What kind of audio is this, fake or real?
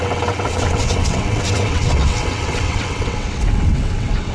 fake